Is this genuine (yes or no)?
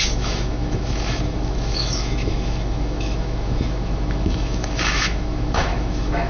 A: no